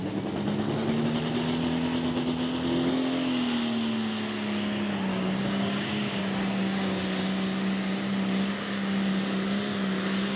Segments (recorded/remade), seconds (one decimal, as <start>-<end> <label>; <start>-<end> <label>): 0.0-5.1 recorded; 5.1-7.0 remade; 7.0-10.4 recorded